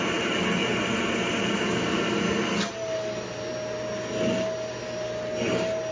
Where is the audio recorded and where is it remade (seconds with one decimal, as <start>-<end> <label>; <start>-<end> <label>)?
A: 0.0-5.9 recorded